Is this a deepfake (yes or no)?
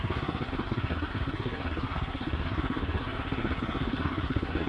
yes